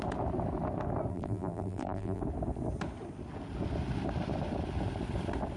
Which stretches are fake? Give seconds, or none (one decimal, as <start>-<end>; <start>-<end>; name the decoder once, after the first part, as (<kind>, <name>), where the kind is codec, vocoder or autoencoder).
1.1-2.2 (vocoder, BigVGAN v2)